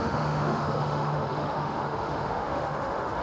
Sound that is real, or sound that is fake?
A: fake